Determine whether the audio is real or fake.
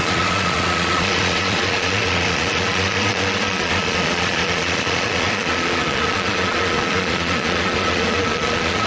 fake